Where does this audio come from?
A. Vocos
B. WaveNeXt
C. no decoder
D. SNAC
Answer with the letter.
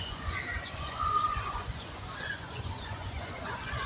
A